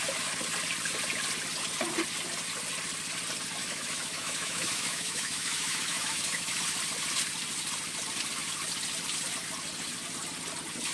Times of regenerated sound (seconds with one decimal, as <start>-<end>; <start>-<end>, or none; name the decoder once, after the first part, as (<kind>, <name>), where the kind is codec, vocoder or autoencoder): 3.6-6.6 (autoencoder, DAC-VAE)